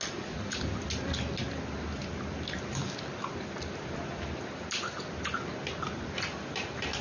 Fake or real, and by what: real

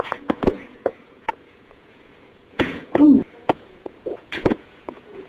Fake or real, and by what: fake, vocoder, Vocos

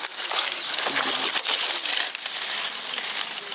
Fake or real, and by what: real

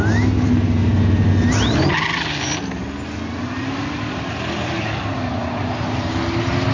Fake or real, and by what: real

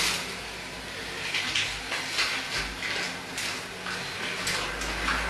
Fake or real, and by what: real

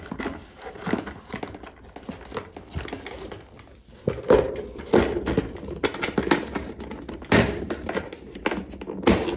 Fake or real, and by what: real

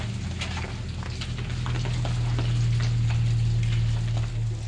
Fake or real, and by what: real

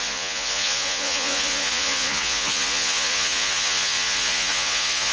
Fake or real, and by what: fake, vocoder, Vocos